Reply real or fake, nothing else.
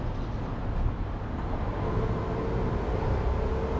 real